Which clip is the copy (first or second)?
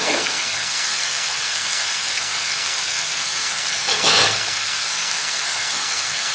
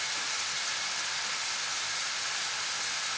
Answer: first